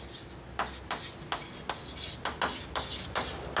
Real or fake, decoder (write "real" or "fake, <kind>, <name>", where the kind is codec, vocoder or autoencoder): real